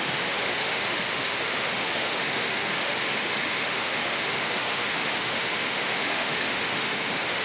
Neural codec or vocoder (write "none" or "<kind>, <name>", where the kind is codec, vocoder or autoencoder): autoencoder, DAC-VAE